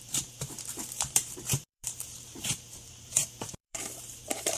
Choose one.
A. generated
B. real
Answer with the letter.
A